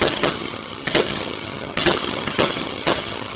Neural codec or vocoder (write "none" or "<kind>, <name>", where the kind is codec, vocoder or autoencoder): vocoder, HiFi-GAN